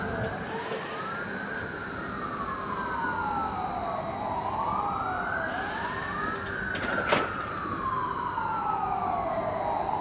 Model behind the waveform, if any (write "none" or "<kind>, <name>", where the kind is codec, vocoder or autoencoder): none